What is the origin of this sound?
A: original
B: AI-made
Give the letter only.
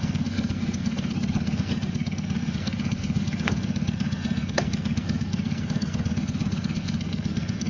B